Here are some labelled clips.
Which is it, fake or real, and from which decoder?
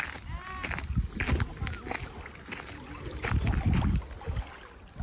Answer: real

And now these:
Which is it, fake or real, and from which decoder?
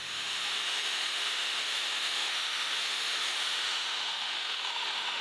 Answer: fake, autoencoder, DAC-VAE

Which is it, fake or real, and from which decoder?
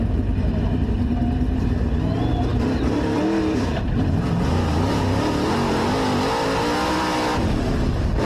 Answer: real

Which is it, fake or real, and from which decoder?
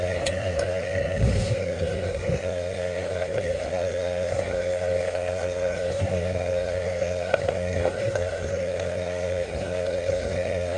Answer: fake, codec, SNAC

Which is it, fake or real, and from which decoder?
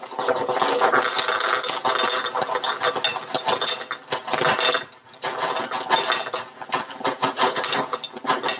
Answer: real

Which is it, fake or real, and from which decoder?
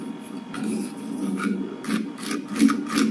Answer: real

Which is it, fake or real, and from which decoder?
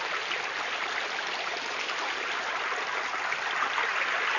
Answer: real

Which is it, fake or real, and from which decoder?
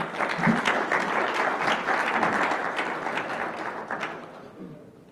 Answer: real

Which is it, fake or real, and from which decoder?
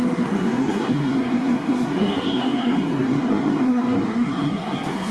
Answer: fake, codec, SNAC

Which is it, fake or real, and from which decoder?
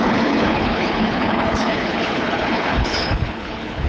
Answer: fake, codec, HILCodec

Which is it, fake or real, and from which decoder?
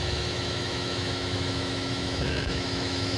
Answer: fake, autoencoder, DAC-VAE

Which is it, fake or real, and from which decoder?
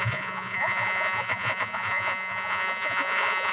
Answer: fake, vocoder, Vocos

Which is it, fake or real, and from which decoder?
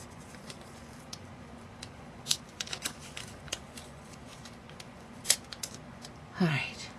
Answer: fake, vocoder, Vocos